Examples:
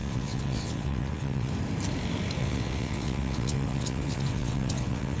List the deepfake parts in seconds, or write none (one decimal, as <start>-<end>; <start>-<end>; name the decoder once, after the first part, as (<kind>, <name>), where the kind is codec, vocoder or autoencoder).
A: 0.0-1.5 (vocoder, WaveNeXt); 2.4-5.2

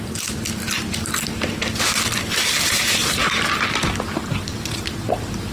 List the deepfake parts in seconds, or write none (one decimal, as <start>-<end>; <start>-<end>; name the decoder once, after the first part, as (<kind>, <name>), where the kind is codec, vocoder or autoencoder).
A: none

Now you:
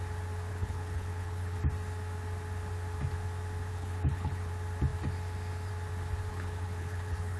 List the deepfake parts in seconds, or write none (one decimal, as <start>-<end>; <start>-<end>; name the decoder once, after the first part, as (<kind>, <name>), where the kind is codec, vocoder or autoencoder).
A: 0.5-1.6 (codec, HILCodec); 3.7-4.5; 6.3-7.4

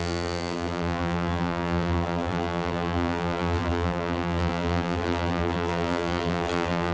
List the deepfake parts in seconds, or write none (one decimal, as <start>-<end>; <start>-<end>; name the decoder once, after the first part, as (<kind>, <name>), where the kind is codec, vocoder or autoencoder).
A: 0.0-6.9 (vocoder, BigVGAN v2)

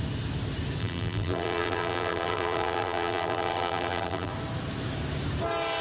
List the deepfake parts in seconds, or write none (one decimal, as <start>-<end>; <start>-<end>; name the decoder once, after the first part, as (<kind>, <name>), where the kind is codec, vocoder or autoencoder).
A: 0.8-4.3 (vocoder, BigVGAN v2)

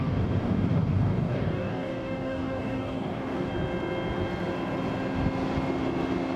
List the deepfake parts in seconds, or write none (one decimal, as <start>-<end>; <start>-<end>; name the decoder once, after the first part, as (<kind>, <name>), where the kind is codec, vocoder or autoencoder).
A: 0.0-3.5 (codec, DAC)

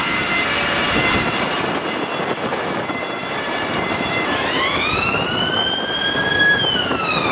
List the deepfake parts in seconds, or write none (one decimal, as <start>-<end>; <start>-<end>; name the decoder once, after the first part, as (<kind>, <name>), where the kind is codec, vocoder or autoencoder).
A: 2.5-5.3 (vocoder, BigVGAN v2)

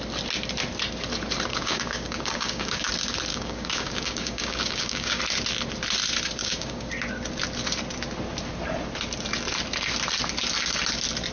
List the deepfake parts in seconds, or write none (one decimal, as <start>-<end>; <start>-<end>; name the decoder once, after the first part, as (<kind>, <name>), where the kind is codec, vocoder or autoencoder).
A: 1.5-2.9 (codec, DAC); 3.3-5.2; 6.4-6.9